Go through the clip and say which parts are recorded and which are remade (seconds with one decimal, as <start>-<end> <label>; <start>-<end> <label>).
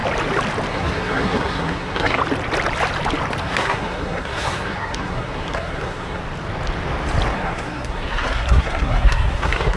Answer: 0.0-0.7 recorded; 0.7-2.2 remade; 2.2-3.4 recorded; 3.4-6.2 remade; 6.2-7.3 recorded; 7.3-9.8 remade